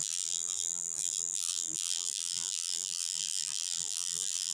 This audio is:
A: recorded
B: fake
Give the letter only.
B